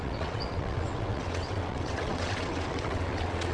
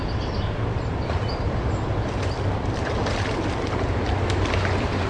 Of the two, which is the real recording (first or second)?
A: second